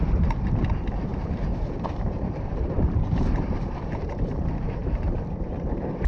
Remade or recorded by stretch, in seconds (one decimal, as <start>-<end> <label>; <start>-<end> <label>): 0.0-1.1 recorded; 1.1-4.0 remade; 4.0-4.8 recorded; 4.8-6.1 remade